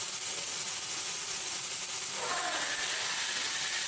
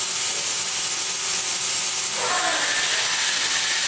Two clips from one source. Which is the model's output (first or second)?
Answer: first